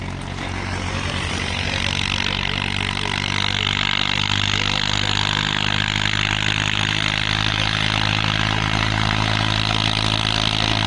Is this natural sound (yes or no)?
yes